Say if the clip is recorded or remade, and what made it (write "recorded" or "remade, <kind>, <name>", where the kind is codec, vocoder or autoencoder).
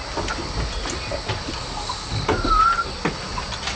recorded